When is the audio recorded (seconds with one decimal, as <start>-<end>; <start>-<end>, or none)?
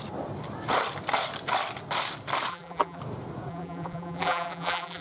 0.0-2.5; 3.0-3.5